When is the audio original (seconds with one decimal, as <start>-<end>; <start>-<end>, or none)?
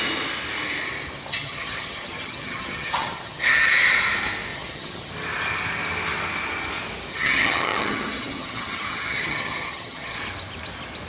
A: 0.0-1.3; 3.7-4.5; 5.1-7.1; 10.2-11.1